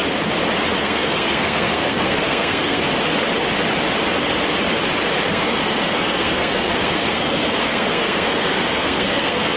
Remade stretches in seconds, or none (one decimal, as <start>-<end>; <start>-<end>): 0.8-2.8; 5.3-9.6